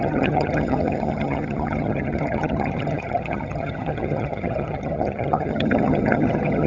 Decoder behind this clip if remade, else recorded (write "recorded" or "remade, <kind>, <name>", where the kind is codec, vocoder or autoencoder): remade, vocoder, HiFi-GAN